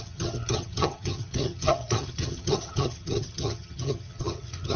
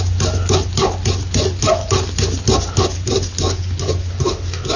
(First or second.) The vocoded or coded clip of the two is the first